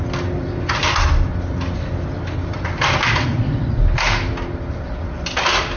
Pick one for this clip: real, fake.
real